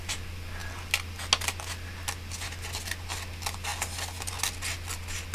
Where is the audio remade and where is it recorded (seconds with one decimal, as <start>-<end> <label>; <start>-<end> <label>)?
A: 0.0-5.3 recorded